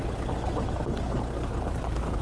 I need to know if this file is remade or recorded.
recorded